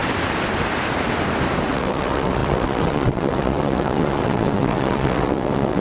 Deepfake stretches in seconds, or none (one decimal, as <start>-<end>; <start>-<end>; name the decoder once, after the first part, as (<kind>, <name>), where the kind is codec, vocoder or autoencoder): 1.7-5.8 (vocoder, WaveNeXt)